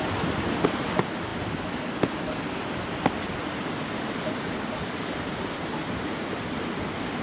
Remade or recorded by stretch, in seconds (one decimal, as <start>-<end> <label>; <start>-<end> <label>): 0.0-7.2 recorded